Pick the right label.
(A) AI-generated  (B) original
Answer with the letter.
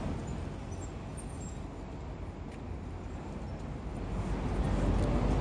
B